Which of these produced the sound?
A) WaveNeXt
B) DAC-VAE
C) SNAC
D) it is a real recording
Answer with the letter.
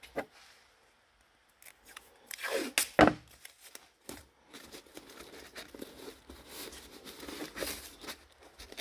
D